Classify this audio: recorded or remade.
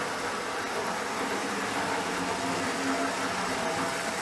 recorded